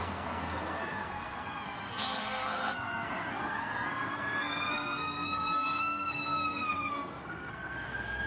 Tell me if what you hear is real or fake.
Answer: fake